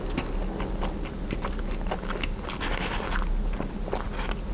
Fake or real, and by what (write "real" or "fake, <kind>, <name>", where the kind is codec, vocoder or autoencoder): real